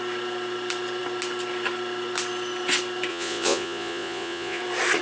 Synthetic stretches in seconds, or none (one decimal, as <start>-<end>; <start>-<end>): 3.1-4.6